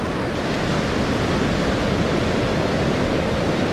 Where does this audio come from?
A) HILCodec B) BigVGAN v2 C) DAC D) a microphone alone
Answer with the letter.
D